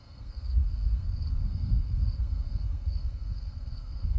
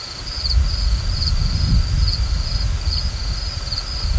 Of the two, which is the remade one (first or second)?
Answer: first